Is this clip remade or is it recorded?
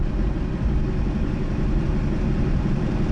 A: recorded